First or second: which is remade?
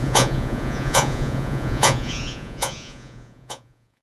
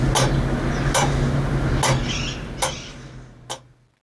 first